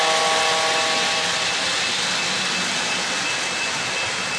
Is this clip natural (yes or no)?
yes